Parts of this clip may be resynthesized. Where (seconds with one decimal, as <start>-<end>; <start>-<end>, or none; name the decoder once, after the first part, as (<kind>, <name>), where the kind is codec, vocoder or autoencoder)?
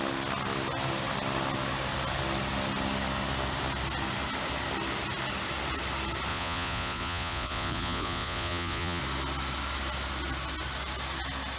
6.3-9.0 (vocoder, Vocos)